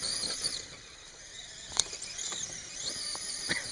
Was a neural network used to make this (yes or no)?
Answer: no